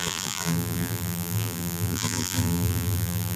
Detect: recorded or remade remade